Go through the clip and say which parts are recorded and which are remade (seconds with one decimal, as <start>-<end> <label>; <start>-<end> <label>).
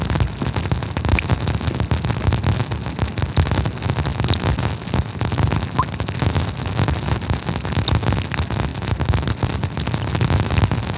0.0-11.0 recorded